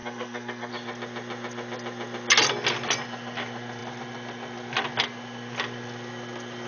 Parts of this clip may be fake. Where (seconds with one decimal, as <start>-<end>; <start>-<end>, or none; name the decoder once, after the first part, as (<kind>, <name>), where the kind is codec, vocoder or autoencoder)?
0.0-0.7 (codec, SNAC)